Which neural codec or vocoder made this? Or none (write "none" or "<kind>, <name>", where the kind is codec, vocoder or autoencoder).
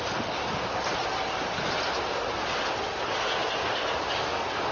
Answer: none